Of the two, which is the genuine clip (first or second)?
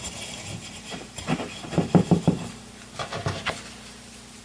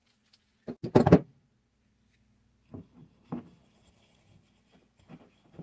second